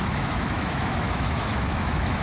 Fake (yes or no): yes